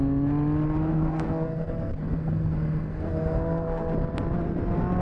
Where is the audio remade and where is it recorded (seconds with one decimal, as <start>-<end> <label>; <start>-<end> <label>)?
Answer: 0.0-0.9 recorded; 0.9-3.9 remade; 3.9-5.0 recorded